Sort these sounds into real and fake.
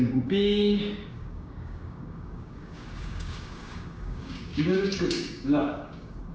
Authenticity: fake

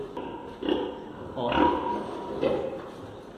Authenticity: real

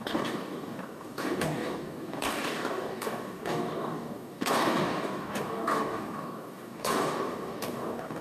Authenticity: fake